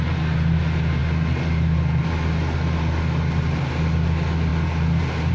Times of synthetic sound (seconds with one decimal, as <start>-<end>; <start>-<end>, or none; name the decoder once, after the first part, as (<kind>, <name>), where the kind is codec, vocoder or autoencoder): none